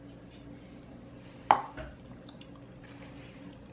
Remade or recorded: recorded